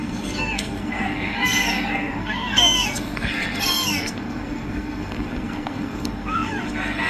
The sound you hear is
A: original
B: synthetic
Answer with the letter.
B